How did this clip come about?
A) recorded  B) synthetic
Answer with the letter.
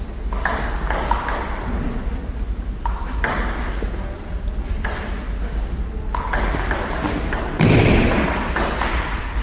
A